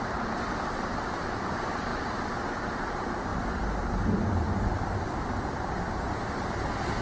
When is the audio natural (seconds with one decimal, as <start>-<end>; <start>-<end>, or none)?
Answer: none